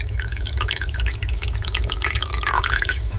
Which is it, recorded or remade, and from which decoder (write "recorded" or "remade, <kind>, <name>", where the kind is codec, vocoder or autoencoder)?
remade, autoencoder, DAC-VAE